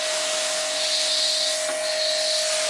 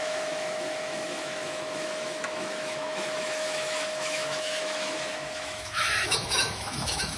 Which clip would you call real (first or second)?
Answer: first